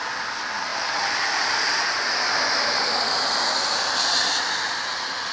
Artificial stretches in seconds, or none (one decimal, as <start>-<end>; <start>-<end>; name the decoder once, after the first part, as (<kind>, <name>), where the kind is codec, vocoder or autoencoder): 0.7-3.9 (vocoder, BigVGAN v2)

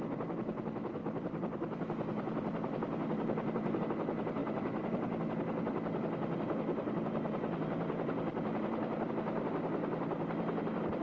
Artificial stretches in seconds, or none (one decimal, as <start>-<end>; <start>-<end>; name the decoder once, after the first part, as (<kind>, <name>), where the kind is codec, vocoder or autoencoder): 1.0-3.8 (vocoder, BigVGAN v2); 4.4-9.1